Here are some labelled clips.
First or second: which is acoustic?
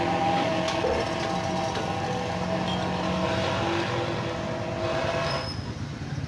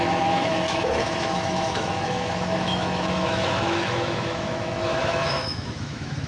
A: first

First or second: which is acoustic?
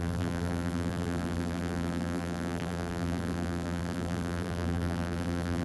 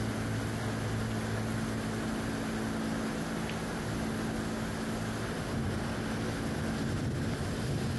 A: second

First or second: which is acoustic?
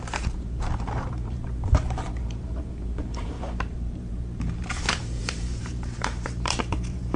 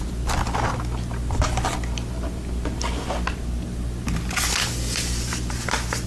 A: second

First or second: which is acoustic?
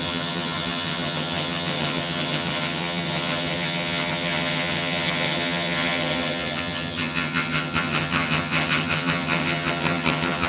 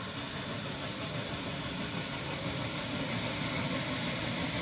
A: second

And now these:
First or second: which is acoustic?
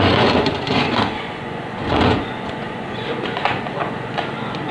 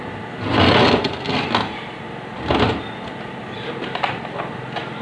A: second